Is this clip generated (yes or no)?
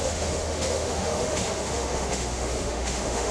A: yes